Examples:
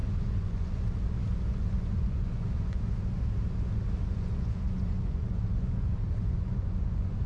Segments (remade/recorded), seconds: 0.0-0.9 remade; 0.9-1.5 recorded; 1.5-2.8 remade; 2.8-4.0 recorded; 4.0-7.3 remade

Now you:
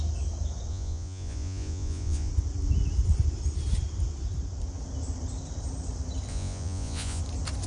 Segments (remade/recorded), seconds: 0.0-0.7 recorded; 0.7-2.3 remade; 2.3-6.3 recorded; 6.3-7.2 remade; 7.2-7.7 recorded

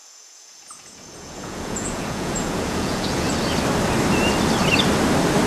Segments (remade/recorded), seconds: 0.0-3.3 remade; 3.3-5.5 recorded

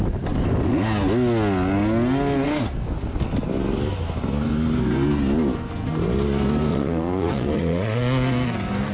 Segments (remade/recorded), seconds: 0.0-6.7 recorded; 6.7-8.0 remade; 8.0-8.9 recorded

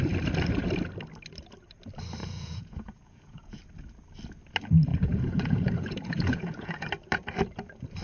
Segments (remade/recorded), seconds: 0.0-2.2 recorded; 2.2-3.6 remade; 3.6-4.9 recorded; 4.9-6.9 remade; 6.9-8.0 recorded